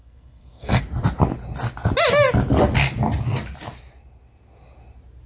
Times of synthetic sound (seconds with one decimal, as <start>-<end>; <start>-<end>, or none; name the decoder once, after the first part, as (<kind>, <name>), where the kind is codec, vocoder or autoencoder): 0.0-0.8 (codec, SNAC)